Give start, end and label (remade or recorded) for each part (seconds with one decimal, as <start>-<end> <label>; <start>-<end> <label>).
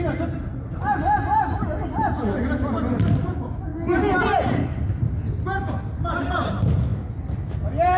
0.0-8.0 recorded